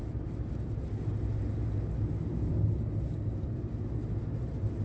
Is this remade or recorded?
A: recorded